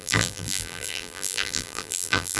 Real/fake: fake